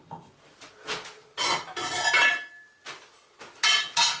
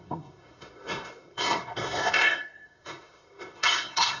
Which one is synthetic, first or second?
second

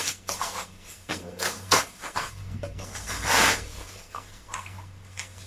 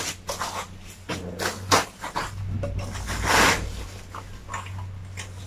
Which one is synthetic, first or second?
first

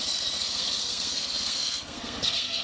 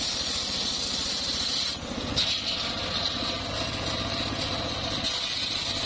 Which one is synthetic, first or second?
first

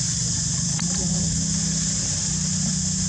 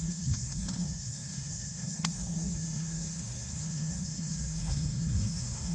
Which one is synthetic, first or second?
second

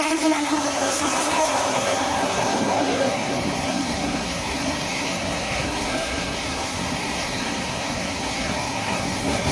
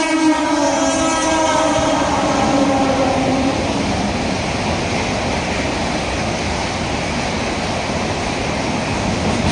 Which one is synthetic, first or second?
first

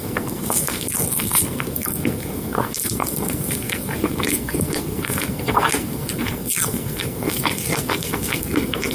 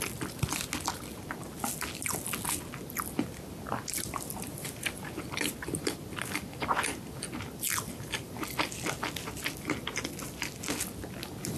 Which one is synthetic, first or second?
first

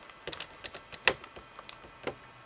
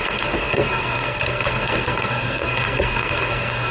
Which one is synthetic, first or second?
second